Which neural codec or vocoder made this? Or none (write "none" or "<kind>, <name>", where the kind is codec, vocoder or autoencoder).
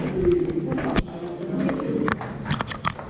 none